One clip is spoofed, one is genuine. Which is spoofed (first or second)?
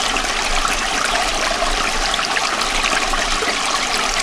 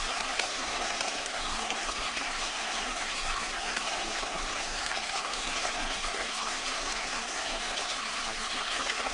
second